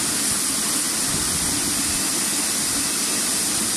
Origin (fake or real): real